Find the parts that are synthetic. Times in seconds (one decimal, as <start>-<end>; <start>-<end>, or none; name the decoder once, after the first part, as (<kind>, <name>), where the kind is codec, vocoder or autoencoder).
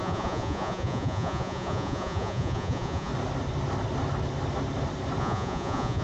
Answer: 0.0-3.1 (vocoder, Vocos); 5.2-6.0